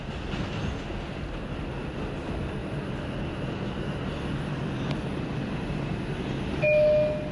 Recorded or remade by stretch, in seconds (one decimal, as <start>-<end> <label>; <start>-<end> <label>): 0.0-7.3 recorded